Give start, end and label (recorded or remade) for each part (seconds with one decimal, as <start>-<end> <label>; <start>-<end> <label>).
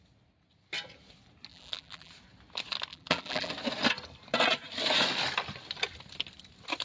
0.0-1.5 recorded; 1.5-2.1 remade; 2.1-2.9 recorded; 2.9-3.5 remade; 3.5-6.8 recorded